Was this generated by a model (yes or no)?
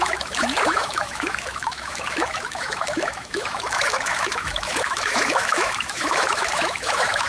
yes